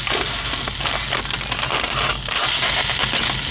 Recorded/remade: recorded